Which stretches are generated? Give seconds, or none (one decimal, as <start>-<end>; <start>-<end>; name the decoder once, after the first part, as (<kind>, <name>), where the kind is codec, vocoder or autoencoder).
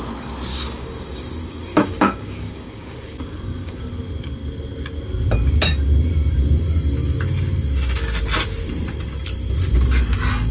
0.5-3.9 (codec, DAC)